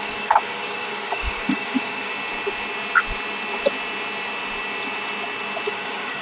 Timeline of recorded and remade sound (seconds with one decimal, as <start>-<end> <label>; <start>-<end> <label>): 0.0-2.1 remade; 2.1-5.7 recorded; 5.7-6.2 remade